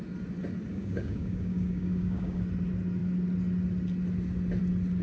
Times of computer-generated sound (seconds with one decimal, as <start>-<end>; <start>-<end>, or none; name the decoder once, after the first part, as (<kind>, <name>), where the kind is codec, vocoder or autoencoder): 0.7-2.4 (codec, DAC)

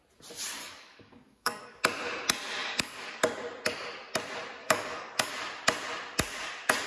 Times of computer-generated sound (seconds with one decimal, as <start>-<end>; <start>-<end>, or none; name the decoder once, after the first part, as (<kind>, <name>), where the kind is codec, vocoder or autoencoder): 0.6-1.8 (codec, DAC); 2.6-3.2; 4.6-5.3

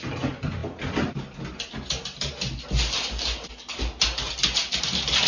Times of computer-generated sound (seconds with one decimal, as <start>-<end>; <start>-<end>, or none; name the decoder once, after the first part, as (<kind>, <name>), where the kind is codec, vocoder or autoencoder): none

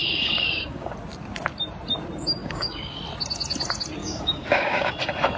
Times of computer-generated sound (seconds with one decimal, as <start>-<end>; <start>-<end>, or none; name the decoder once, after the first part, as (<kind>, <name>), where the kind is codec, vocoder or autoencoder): 0.0-0.9 (codec, DAC); 2.4-3.0; 4.0-4.9

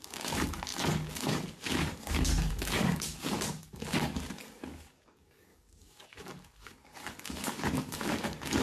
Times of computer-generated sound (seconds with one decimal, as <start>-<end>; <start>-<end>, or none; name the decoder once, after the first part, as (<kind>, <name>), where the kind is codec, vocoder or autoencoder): 0.0-8.6 (codec, DAC)

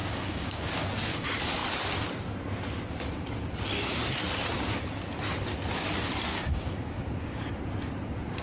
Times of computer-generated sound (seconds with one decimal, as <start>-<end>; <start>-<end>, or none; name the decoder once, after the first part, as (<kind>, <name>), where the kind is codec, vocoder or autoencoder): 0.0-0.6 (codec, DAC); 6.3-7.5